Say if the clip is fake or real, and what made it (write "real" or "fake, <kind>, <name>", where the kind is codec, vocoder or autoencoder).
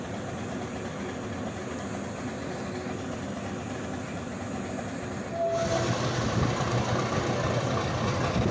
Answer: real